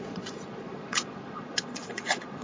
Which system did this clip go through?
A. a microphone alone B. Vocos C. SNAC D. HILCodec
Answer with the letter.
B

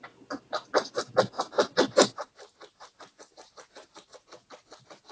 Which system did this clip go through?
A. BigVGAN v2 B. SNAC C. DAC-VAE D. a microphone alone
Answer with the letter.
D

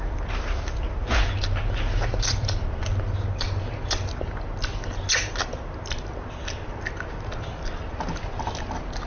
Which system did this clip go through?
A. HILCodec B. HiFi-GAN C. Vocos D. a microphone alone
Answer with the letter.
D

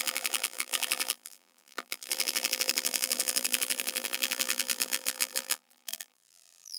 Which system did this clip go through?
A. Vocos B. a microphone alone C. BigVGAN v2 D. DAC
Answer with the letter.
C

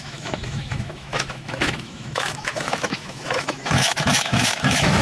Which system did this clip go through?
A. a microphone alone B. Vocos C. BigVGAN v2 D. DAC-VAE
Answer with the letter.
D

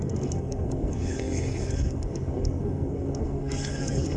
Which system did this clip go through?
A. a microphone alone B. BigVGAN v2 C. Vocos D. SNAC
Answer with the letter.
D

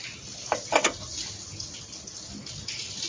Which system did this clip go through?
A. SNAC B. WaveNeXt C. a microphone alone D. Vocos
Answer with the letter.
C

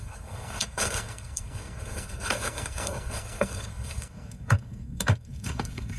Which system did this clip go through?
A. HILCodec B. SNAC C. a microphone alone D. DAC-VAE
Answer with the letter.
B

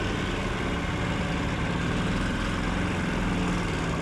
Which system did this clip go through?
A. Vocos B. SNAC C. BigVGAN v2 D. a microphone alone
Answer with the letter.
D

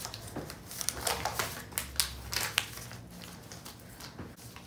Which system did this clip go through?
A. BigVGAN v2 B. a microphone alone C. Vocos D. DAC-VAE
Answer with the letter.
B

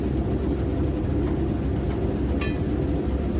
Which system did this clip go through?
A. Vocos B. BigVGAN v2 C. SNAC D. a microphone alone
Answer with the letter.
D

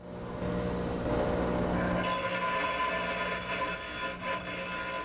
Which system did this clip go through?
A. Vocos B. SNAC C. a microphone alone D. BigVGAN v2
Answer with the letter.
C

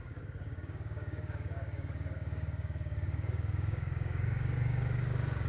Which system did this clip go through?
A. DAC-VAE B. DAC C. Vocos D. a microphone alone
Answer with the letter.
B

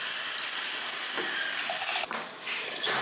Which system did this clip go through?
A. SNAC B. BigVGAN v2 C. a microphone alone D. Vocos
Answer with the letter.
B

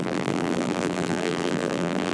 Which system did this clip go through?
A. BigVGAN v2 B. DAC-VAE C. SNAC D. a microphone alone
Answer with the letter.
A